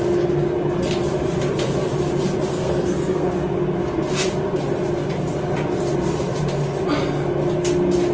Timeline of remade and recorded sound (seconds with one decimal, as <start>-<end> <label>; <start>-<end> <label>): 0.0-2.5 recorded; 2.5-3.3 remade; 3.3-8.1 recorded